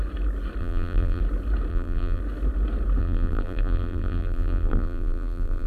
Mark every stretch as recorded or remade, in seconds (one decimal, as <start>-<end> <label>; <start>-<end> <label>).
0.0-0.6 recorded; 0.6-1.2 remade; 1.2-1.7 recorded; 1.7-2.2 remade; 2.2-3.0 recorded; 3.0-5.7 remade